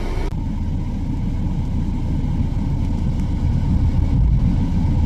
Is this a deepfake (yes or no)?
no